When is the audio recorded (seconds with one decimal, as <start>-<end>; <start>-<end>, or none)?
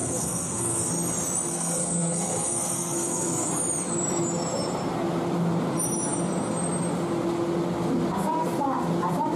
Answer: 0.9-1.5; 3.5-9.4